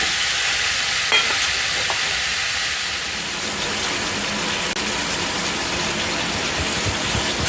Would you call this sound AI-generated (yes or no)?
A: no